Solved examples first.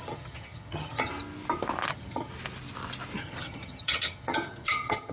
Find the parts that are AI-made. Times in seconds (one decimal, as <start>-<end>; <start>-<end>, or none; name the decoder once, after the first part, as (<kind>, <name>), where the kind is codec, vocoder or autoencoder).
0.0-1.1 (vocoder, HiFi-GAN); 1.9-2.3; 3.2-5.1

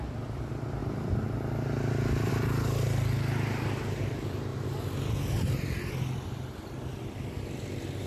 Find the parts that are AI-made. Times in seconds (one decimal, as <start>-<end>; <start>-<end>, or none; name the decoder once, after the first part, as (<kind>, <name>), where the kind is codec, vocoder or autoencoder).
none

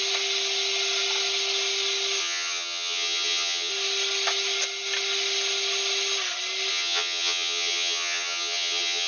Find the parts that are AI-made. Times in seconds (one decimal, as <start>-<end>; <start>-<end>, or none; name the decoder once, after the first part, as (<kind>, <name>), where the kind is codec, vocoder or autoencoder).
2.2-3.7 (vocoder, HiFi-GAN); 6.7-9.1

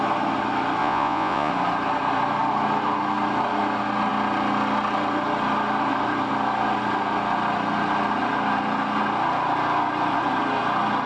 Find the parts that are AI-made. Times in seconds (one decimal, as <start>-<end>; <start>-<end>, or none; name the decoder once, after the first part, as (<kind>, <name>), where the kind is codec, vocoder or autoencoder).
0.8-1.5 (vocoder, Vocos)

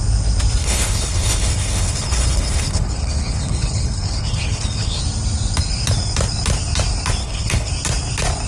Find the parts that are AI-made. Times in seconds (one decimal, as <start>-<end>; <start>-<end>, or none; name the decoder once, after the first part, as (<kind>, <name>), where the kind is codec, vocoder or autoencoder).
0.6-5.0 (codec, HILCodec); 7.2-7.7

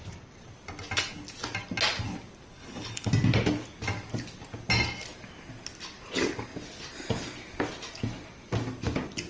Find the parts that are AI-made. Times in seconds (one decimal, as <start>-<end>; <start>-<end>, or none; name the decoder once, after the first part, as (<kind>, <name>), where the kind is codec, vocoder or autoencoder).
2.5-3.1 (codec, HILCodec)